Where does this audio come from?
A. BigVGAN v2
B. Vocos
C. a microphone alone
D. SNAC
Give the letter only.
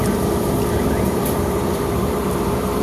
A